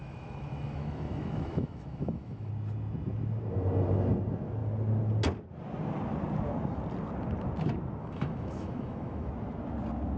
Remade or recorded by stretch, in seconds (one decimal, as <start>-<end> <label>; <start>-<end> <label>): 0.0-2.5 remade; 2.5-8.0 recorded; 8.0-9.3 remade; 9.3-10.2 recorded